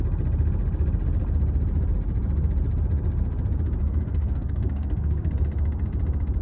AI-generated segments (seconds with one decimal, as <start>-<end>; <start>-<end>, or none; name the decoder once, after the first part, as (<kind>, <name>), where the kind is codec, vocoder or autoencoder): 3.8-5.3 (codec, SNAC)